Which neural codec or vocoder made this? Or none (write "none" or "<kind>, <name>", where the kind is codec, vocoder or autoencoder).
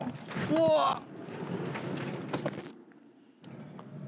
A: none